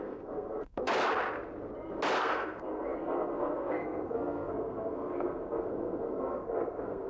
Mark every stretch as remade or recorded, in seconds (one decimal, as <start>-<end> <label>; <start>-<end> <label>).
0.0-0.9 remade; 0.9-2.2 recorded; 2.2-7.1 remade